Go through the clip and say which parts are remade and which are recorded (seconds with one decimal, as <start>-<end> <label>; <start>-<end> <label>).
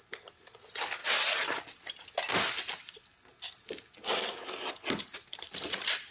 0.0-6.1 recorded